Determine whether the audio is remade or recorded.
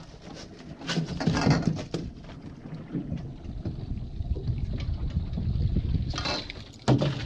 recorded